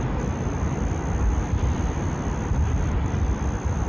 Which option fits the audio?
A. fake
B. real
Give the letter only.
B